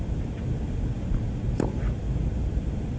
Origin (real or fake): real